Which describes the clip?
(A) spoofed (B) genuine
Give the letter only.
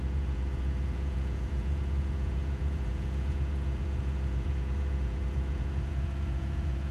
A